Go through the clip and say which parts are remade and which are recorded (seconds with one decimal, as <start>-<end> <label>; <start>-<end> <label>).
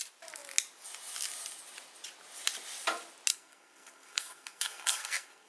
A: 0.0-3.3 recorded; 3.3-5.5 remade